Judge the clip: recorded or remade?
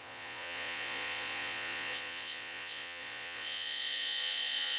remade